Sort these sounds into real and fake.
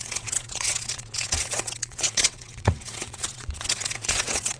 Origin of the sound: fake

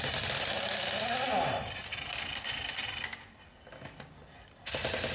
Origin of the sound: real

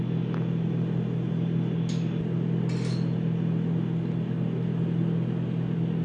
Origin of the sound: real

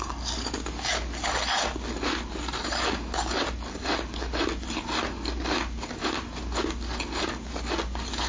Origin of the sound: real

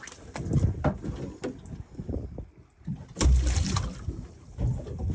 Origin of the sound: real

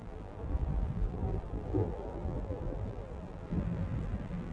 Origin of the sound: fake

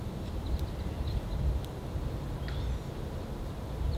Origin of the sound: real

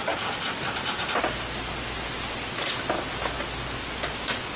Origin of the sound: real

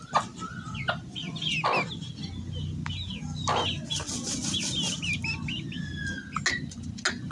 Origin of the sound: real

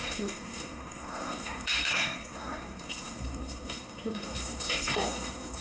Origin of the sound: fake